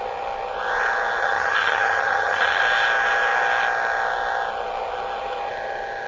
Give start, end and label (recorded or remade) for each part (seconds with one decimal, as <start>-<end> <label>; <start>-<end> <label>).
0.0-1.2 recorded; 1.2-2.6 remade; 2.6-6.1 recorded